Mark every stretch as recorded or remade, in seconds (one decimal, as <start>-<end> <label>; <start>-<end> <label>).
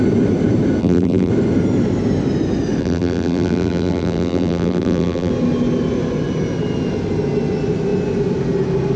0.0-0.8 recorded; 0.8-1.3 remade; 1.3-2.8 recorded; 2.8-5.3 remade; 5.3-9.0 recorded